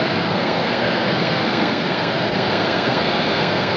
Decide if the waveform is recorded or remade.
remade